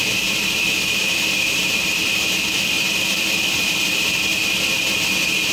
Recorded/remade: remade